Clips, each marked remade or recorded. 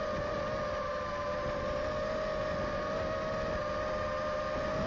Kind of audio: recorded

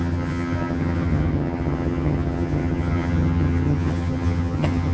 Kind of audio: remade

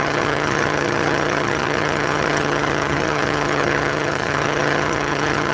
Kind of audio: remade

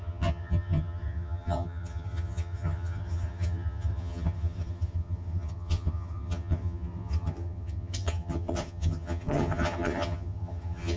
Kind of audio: remade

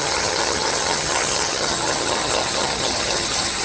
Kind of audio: remade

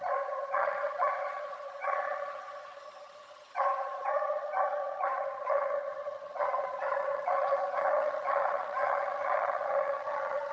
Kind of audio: remade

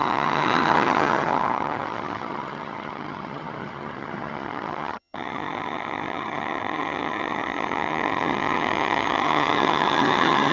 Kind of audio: remade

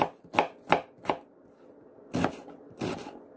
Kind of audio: recorded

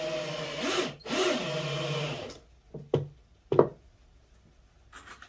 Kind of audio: recorded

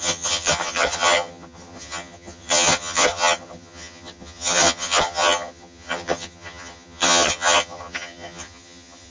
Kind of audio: remade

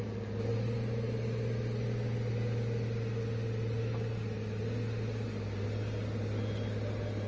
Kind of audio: recorded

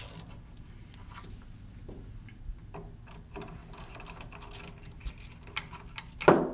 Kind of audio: recorded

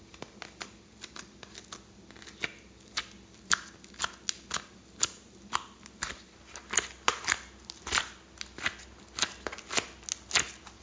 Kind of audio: recorded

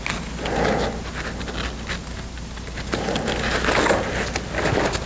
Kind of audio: recorded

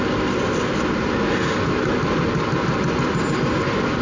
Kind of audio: recorded